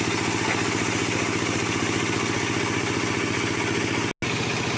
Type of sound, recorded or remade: recorded